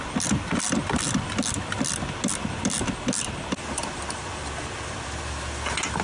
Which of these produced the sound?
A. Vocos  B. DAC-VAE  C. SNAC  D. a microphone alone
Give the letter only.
D